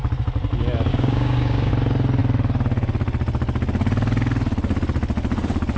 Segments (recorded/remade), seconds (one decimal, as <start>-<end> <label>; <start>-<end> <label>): 0.0-0.9 recorded; 0.9-1.7 remade; 1.7-5.8 recorded